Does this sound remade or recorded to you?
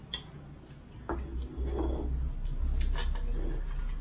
recorded